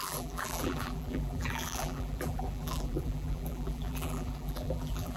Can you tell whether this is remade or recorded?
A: remade